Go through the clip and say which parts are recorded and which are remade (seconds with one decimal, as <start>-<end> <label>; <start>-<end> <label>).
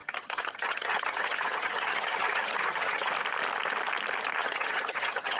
0.0-3.1 remade; 3.1-4.4 recorded; 4.4-5.4 remade